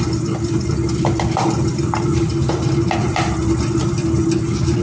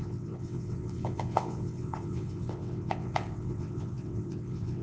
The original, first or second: first